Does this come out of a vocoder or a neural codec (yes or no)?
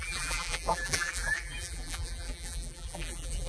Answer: yes